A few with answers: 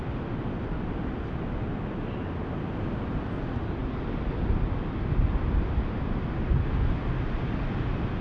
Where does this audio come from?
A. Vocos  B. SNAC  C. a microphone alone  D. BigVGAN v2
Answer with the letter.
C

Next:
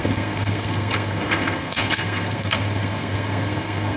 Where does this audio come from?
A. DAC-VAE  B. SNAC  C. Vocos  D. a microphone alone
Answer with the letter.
B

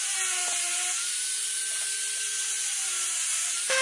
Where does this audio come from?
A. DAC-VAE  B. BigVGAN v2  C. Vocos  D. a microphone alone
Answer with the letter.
B